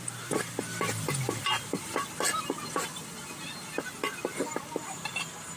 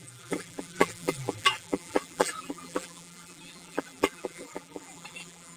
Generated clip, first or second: second